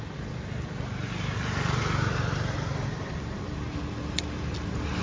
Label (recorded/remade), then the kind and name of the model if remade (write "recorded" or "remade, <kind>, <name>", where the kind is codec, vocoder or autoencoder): recorded